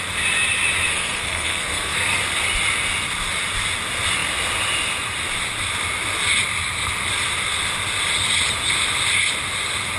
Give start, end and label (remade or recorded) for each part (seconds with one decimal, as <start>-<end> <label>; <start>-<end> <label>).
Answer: 0.0-0.9 recorded; 0.9-2.2 remade; 2.2-10.0 recorded